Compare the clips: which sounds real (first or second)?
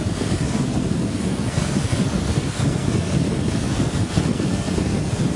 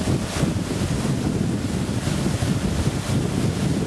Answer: second